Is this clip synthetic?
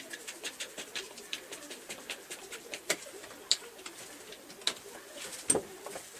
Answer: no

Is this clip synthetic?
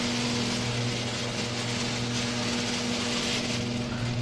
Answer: no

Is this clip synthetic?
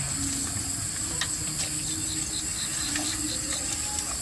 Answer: no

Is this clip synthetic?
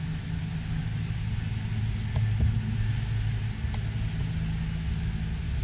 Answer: no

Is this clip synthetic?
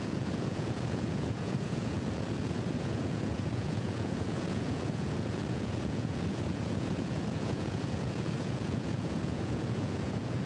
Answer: yes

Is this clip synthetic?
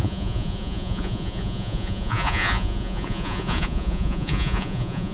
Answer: yes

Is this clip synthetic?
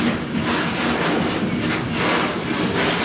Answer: no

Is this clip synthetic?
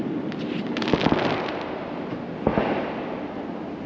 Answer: no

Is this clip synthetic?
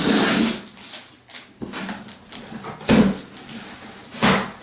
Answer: no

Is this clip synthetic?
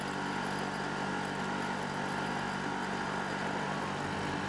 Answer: no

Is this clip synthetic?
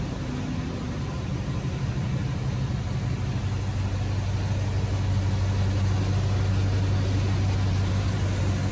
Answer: no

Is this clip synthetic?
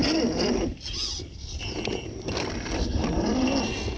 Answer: no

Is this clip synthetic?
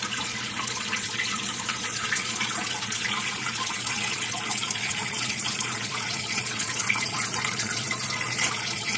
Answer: yes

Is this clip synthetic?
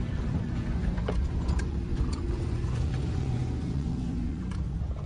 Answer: yes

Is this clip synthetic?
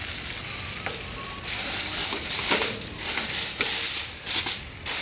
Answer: no